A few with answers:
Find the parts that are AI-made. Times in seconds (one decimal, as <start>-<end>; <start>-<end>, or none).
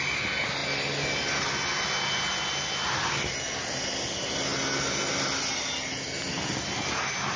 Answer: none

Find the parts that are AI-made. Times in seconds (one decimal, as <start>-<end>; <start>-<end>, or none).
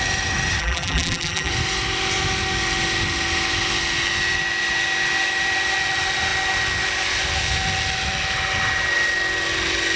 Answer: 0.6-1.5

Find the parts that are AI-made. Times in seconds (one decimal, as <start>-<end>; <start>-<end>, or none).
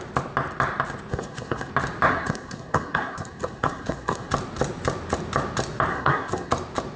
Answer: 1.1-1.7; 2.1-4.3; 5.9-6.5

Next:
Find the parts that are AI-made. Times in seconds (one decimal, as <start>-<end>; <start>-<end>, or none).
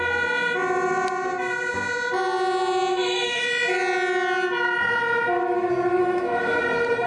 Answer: 2.9-3.4; 6.0-6.6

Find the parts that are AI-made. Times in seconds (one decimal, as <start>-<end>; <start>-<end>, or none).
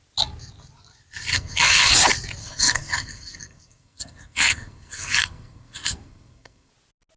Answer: 1.3-1.9; 2.4-6.7